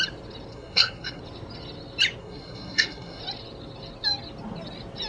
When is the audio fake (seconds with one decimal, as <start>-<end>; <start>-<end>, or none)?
0.5-1.2; 2.2-3.2